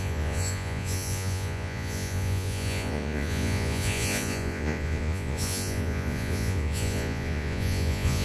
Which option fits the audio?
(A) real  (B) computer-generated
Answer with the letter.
B